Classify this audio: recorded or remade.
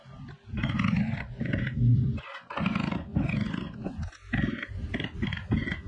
recorded